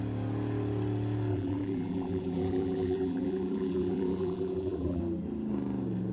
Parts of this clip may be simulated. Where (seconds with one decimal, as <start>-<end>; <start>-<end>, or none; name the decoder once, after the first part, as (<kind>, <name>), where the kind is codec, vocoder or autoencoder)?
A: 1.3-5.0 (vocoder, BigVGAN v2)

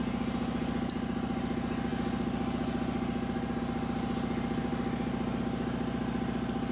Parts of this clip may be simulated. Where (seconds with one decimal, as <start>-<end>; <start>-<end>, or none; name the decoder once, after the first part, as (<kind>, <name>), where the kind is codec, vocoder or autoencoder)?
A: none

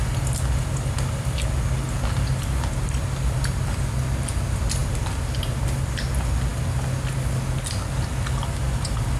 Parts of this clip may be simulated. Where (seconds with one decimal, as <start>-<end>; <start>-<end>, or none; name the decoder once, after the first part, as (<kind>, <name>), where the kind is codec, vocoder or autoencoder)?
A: none

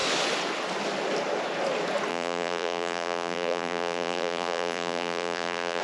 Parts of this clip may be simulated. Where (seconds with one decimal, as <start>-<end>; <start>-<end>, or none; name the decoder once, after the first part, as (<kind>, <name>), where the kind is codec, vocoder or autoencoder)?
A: 2.1-5.8 (vocoder, BigVGAN v2)

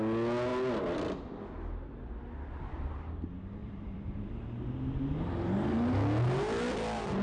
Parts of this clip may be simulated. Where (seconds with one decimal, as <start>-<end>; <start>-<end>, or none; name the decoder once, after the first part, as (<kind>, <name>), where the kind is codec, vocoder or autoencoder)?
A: 3.6-4.3 (vocoder, BigVGAN v2)

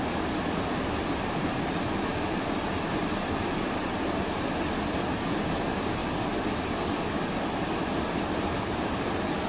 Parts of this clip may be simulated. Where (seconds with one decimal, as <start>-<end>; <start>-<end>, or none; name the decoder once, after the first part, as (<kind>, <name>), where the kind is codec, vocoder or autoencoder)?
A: none

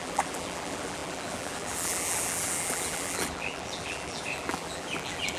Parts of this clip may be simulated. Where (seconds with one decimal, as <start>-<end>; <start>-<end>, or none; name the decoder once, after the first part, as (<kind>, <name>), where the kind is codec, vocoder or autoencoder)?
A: 0.0-5.4 (vocoder, BigVGAN v2)

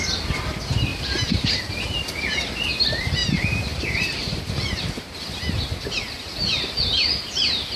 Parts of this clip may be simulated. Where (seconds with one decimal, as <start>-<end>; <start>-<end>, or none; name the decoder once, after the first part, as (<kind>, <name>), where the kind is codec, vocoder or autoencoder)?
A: 0.9-1.6 (vocoder, BigVGAN v2); 3.2-4.5